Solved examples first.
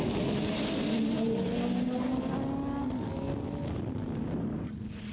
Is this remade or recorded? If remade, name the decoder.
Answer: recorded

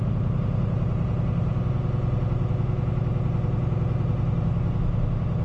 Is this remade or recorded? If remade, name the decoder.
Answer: recorded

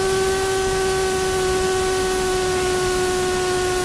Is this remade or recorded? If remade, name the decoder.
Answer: recorded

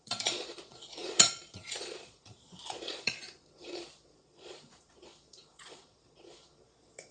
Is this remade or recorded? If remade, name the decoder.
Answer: remade, vocoder, Vocos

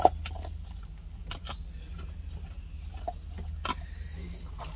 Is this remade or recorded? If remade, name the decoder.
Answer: recorded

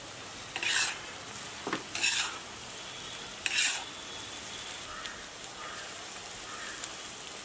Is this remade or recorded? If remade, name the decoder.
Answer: recorded